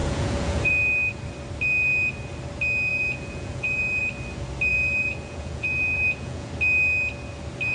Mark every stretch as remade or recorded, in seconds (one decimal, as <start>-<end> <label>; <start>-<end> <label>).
0.0-0.7 remade; 0.7-2.9 recorded; 2.9-4.0 remade; 4.0-4.7 recorded; 4.7-6.5 remade; 6.5-7.7 recorded